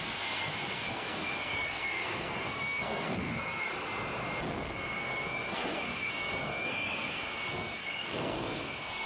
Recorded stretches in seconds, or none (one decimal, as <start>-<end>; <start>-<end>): 3.7-4.5